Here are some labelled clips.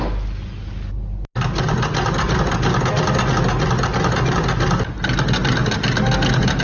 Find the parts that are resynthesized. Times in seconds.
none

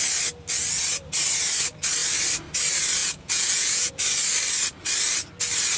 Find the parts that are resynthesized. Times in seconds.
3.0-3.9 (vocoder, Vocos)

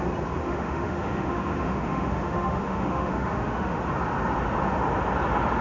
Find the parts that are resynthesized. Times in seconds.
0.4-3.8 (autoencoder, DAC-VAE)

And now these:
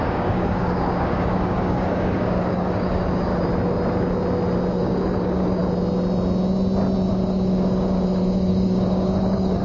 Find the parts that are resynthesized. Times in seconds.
0.0-3.3 (codec, DAC); 4.8-5.6; 7.1-9.6

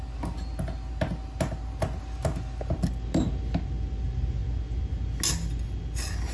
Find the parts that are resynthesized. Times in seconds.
none